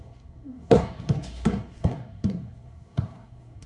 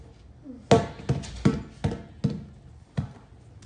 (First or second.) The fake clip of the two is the first